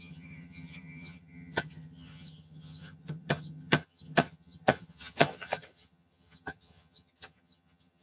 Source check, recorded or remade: remade